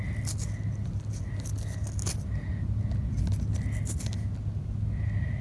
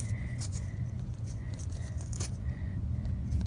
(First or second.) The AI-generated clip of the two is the second